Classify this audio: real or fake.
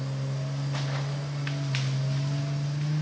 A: real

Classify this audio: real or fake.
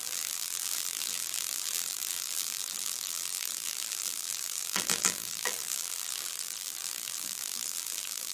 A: fake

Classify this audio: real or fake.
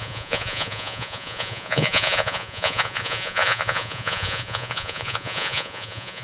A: fake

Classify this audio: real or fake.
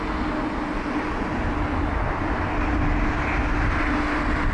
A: real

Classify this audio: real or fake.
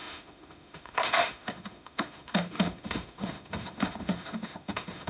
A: fake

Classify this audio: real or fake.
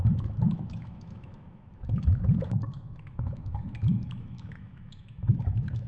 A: fake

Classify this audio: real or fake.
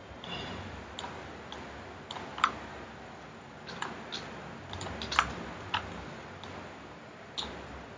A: real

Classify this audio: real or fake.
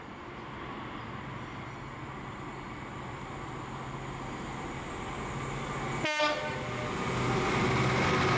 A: real